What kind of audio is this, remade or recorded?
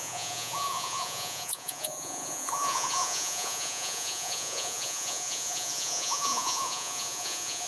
remade